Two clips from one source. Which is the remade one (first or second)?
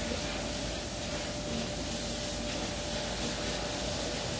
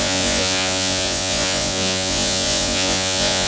second